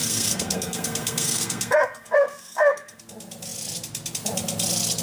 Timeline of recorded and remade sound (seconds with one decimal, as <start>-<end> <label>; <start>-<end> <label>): 0.0-3.0 remade; 3.0-5.0 recorded